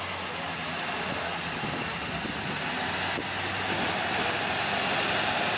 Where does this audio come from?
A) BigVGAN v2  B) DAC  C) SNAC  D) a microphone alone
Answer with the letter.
D